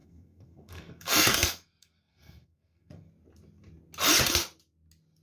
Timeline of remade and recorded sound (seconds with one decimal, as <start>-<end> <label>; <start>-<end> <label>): 0.0-3.1 remade; 3.1-5.2 recorded